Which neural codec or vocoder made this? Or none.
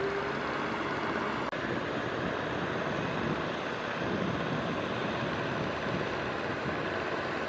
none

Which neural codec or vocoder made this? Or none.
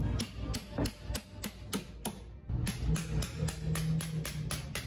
none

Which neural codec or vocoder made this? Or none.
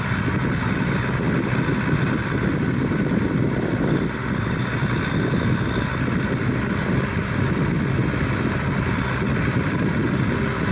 none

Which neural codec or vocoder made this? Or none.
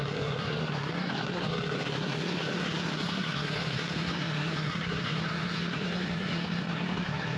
codec, SNAC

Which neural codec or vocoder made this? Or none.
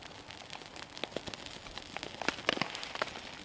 none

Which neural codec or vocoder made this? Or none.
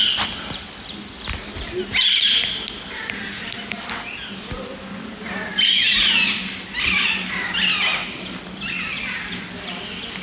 none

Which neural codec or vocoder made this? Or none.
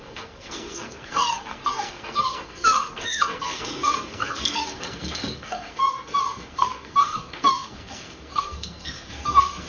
codec, SNAC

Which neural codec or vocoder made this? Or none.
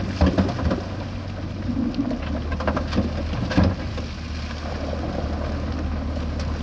none